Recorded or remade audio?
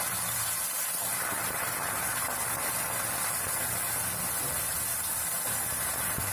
recorded